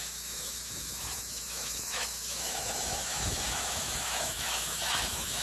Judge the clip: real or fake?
fake